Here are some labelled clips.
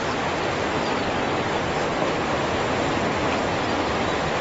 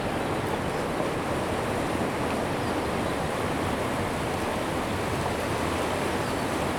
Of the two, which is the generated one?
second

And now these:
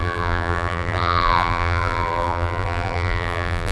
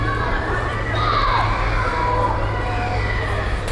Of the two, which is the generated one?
first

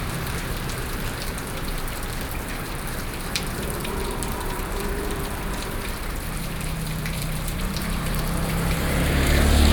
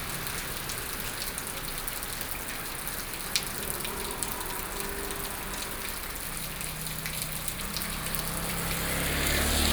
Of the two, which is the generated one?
first